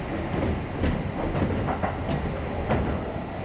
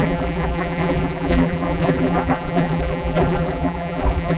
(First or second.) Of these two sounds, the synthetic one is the second